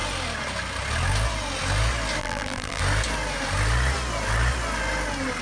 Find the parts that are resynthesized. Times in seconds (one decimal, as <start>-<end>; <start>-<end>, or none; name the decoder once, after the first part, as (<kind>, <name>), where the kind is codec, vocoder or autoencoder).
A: 2.2-2.8 (vocoder, BigVGAN v2)